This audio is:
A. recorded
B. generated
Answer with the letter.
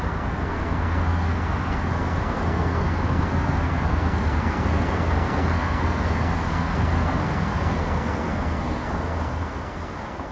B